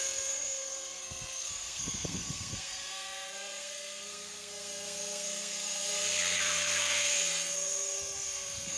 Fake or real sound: fake